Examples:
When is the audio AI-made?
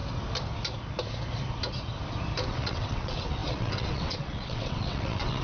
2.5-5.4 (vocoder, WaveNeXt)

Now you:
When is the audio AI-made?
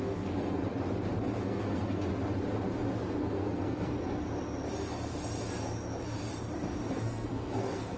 0.0-0.6 (codec, SNAC); 1.2-2.1; 3.2-3.9; 7.0-8.0